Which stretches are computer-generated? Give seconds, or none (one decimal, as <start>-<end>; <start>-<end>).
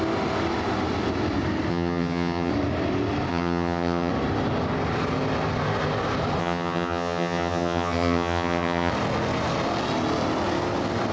1.7-2.5; 3.3-4.1; 6.4-8.9